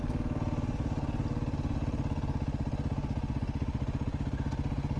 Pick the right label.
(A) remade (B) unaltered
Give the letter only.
B